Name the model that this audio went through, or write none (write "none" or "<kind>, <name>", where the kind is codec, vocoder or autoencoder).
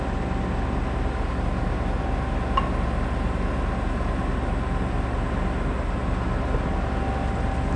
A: none